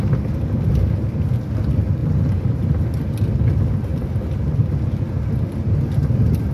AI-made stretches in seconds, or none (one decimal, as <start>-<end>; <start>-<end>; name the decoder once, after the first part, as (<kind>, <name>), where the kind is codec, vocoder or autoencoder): 2.0-3.2 (vocoder, BigVGAN v2)